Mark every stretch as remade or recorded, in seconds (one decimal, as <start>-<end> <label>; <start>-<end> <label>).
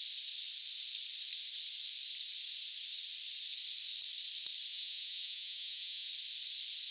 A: 0.0-4.7 recorded; 4.7-6.1 remade; 6.1-6.9 recorded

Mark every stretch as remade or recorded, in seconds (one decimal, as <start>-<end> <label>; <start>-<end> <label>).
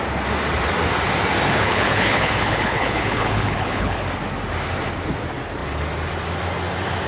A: 0.0-1.5 recorded; 1.5-4.0 remade; 4.0-7.1 recorded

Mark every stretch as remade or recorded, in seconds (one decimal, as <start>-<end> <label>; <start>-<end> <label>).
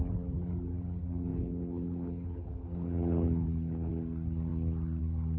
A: 0.0-1.3 recorded; 1.3-3.9 remade; 3.9-5.4 recorded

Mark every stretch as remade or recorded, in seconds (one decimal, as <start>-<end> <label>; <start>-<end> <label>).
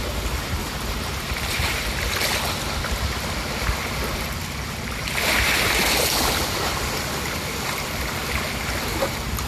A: 0.0-0.6 recorded; 0.6-1.9 remade; 1.9-9.5 recorded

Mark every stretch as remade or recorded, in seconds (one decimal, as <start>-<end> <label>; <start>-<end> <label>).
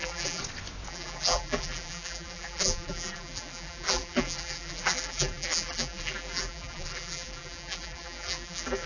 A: 0.0-0.4 remade; 0.4-0.9 recorded; 0.9-8.9 remade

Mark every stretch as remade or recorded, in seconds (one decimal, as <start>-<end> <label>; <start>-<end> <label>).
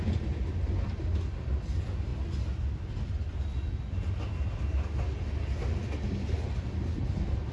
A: 0.0-7.5 recorded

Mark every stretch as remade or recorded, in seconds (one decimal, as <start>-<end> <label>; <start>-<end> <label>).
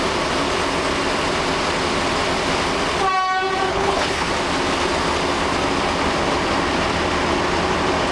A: 0.0-3.7 recorded; 3.7-4.3 remade; 4.3-8.1 recorded